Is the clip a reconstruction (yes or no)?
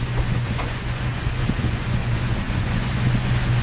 yes